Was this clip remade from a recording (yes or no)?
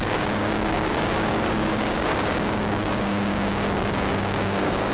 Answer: yes